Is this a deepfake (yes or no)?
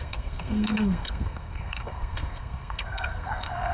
yes